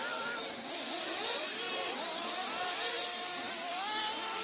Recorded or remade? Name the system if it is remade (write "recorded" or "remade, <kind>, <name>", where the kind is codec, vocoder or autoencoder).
recorded